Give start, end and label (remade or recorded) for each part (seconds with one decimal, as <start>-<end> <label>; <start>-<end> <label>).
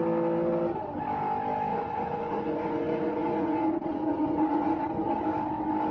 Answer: 0.0-1.7 recorded; 1.7-5.2 remade; 5.2-5.9 recorded